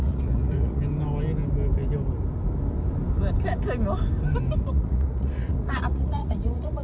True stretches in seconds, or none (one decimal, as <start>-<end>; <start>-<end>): 0.8-4.6